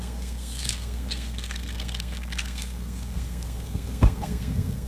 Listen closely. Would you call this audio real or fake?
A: fake